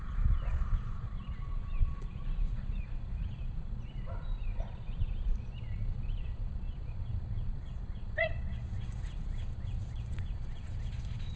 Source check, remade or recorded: remade